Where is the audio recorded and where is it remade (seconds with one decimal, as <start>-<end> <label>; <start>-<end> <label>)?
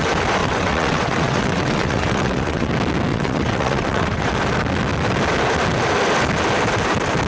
0.0-0.4 recorded; 0.4-2.7 remade; 2.7-3.1 recorded; 3.1-4.3 remade; 4.3-7.3 recorded